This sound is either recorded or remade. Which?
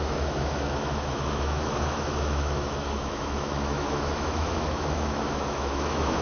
remade